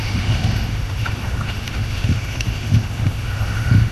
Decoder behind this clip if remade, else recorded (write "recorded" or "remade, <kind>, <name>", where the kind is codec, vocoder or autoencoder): remade, autoencoder, DAC-VAE